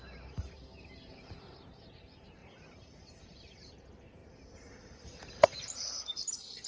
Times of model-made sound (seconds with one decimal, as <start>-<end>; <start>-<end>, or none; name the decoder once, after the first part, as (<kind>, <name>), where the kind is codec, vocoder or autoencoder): 0.0-6.7 (vocoder, BigVGAN v2)